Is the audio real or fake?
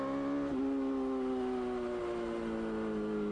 real